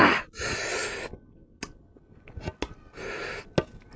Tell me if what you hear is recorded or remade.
recorded